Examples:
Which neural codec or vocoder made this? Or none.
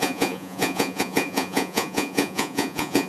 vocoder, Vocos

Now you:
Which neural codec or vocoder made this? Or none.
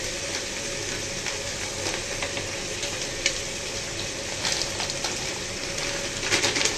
none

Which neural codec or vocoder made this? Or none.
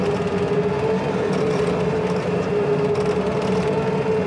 none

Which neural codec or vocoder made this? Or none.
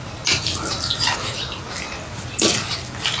none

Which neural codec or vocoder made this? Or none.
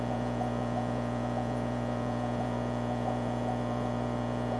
vocoder, Vocos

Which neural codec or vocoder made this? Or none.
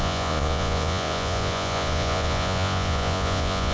vocoder, Vocos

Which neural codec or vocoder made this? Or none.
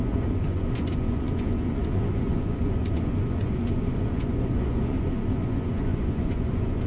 vocoder, Vocos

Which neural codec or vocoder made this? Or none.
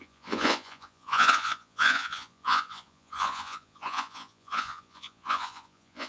vocoder, Vocos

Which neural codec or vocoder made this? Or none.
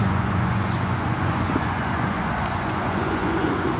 vocoder, Vocos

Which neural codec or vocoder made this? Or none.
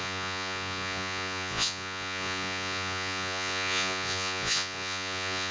vocoder, Vocos